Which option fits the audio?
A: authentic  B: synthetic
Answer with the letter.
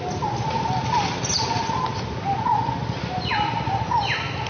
A